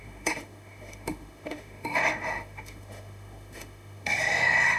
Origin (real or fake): fake